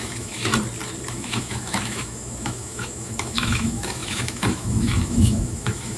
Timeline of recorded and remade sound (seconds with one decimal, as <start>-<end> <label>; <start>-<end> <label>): 0.0-0.5 remade; 0.5-1.1 recorded; 1.1-6.0 remade